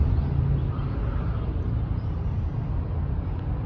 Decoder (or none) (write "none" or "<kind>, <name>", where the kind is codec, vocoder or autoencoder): none